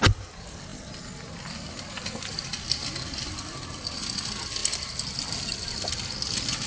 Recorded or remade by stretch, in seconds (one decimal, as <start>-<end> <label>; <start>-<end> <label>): 0.0-6.7 recorded